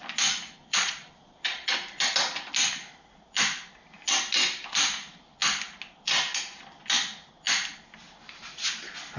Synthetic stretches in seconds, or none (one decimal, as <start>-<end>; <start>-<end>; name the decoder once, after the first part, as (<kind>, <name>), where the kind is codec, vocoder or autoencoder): 0.6-1.7 (vocoder, Vocos)